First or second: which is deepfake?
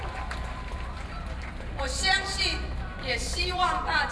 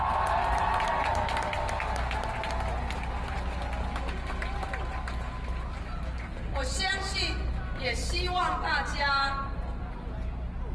first